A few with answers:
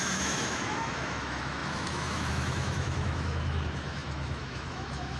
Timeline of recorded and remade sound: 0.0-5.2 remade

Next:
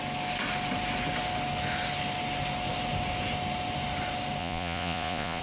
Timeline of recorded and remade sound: 0.0-4.4 recorded; 4.4-5.4 remade